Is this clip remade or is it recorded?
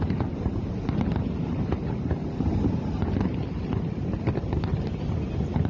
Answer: recorded